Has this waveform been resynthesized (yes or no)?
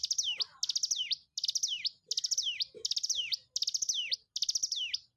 no